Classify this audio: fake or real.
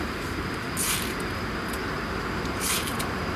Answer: real